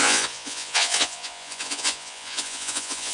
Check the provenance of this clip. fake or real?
fake